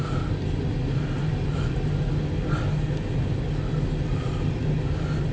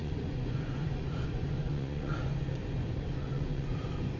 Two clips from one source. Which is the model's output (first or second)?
second